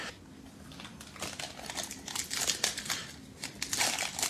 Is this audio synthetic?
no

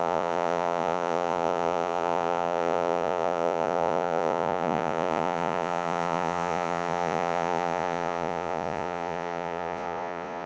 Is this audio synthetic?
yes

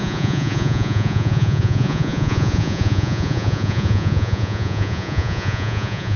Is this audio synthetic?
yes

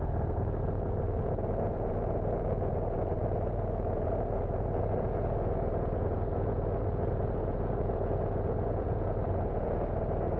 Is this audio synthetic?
yes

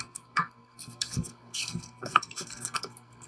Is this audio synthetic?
yes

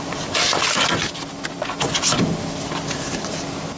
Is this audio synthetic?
no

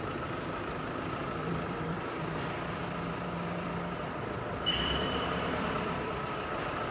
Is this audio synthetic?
yes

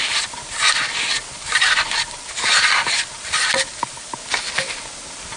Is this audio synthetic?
no